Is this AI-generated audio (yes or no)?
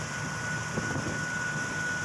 no